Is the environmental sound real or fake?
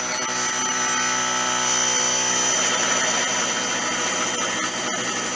real